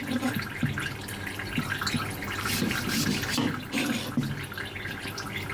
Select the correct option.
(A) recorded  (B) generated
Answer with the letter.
A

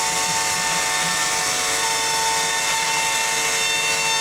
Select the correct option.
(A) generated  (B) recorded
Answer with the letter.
B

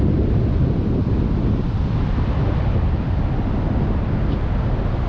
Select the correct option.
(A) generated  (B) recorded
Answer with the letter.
B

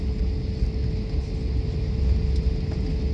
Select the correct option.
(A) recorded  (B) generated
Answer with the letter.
A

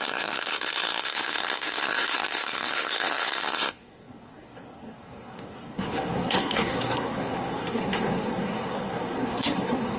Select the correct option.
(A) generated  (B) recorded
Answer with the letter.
A